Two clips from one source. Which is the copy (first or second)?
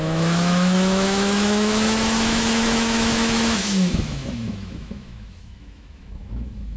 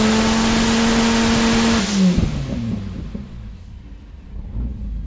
first